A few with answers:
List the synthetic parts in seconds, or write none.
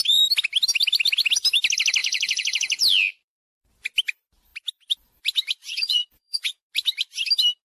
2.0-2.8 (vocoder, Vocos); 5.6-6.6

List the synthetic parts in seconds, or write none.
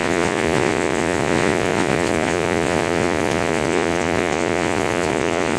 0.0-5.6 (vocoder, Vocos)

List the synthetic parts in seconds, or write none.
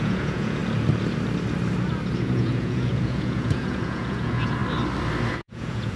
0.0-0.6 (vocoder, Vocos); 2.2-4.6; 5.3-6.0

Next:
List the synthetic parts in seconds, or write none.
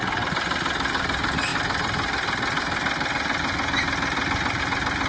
none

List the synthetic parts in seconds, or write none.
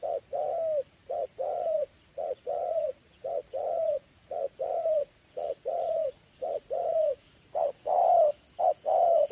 0.0-0.4 (vocoder, Vocos); 0.9-8.0; 8.6-9.3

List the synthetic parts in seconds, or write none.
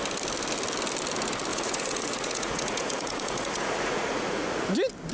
1.5-4.6 (vocoder, Vocos)